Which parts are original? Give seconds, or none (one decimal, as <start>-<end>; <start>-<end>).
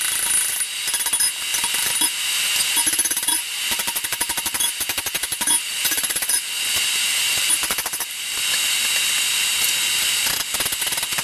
0.0-1.5; 6.6-7.1; 8.2-11.2